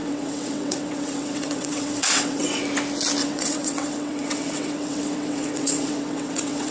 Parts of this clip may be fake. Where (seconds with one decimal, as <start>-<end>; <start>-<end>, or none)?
0.0-2.6; 3.2-6.7